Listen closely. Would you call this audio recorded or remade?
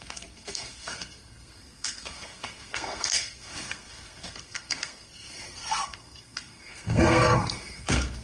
remade